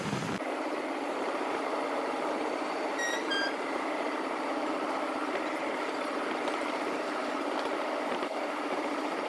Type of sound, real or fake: fake